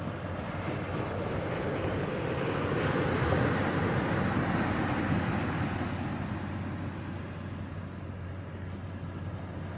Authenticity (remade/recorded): recorded